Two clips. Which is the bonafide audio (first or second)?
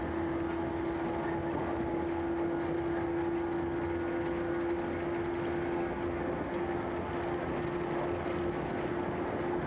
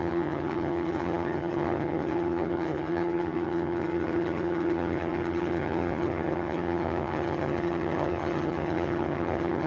first